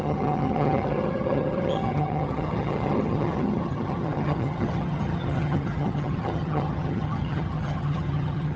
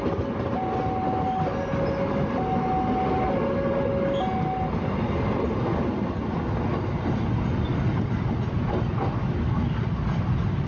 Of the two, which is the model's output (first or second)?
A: first